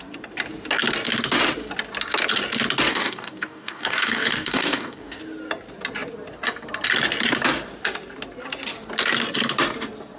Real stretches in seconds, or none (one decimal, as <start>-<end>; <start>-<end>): 0.0-2.9; 5.2-10.2